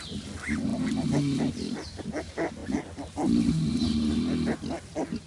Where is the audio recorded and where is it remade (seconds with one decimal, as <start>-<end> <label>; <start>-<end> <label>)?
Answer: 0.0-5.3 recorded